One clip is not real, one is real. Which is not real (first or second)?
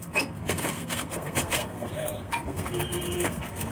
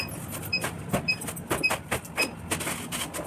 first